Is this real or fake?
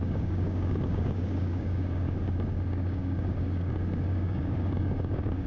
fake